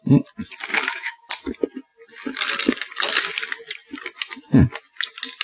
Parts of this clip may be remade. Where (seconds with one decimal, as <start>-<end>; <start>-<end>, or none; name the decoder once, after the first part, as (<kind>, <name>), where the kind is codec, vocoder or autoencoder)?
0.7-1.3 (autoencoder, DAC-VAE)